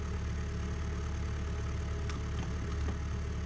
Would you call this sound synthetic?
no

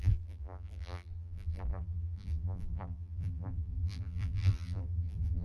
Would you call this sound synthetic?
yes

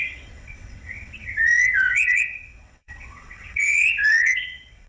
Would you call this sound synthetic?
yes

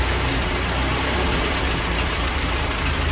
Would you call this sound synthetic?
no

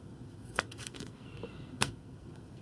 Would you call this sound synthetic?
yes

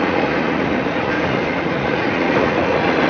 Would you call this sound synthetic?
yes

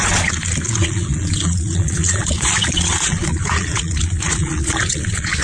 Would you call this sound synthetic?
yes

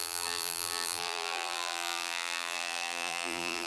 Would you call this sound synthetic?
yes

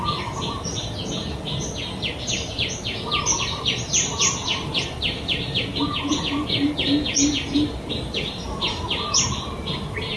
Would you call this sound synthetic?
no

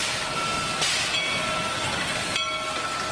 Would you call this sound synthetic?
no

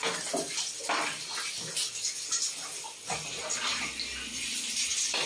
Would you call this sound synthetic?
no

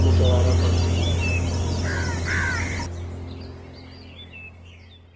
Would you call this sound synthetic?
no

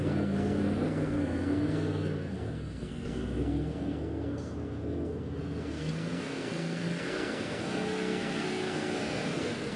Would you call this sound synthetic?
yes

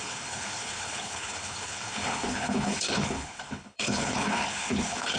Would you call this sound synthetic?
yes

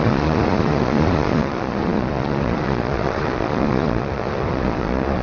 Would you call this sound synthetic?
yes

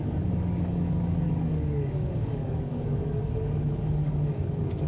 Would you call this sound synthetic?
yes